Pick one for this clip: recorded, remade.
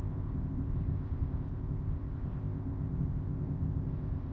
remade